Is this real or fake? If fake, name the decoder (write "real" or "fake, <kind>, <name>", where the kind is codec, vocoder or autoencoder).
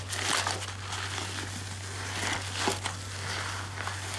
real